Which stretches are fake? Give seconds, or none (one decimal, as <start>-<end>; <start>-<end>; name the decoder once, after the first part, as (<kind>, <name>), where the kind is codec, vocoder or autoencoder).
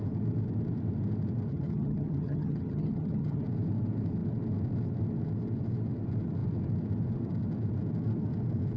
1.5-3.4 (vocoder, HiFi-GAN)